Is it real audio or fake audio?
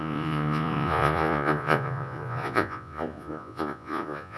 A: fake